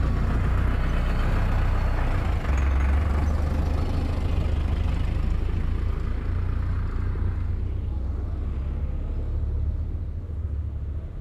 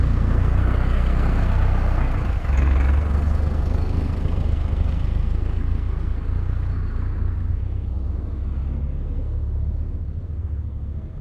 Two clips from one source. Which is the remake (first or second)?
second